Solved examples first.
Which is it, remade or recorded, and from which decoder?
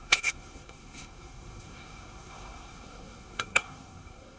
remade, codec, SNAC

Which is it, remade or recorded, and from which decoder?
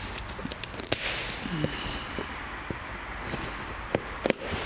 recorded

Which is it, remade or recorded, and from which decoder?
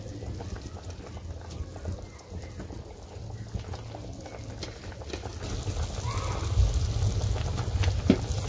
recorded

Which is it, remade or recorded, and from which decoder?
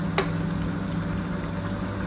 recorded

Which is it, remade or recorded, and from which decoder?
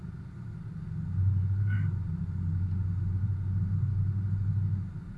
recorded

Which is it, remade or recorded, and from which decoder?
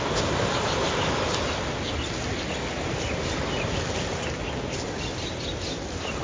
recorded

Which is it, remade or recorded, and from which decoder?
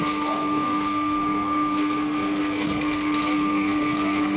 remade, codec, SNAC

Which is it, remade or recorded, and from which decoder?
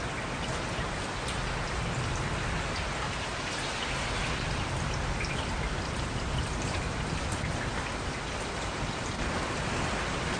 recorded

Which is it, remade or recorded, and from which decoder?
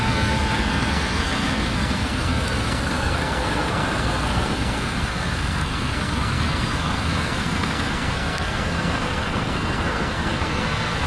remade, codec, SNAC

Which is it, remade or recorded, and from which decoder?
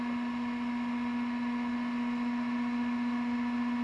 recorded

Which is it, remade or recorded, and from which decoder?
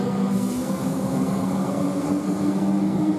remade, codec, SNAC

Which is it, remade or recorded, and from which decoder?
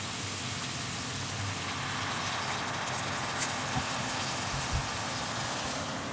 recorded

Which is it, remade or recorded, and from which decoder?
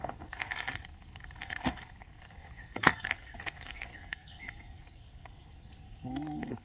remade, codec, SNAC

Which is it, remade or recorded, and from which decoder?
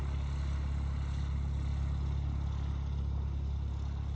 recorded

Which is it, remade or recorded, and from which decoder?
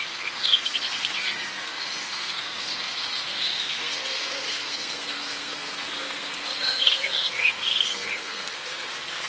remade, codec, SNAC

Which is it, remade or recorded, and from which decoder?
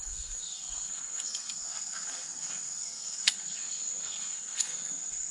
remade, codec, SNAC